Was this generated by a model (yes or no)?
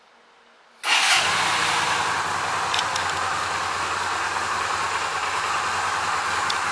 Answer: no